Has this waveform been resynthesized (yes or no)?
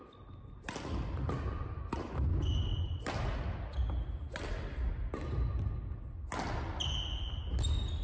no